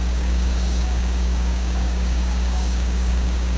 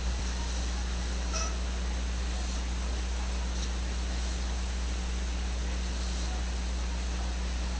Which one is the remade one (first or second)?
first